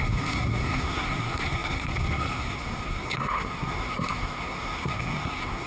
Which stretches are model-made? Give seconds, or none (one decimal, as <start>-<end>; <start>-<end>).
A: 0.0-5.7

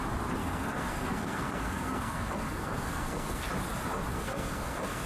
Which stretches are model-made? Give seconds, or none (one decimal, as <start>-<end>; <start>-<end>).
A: 0.4-3.5; 4.1-5.1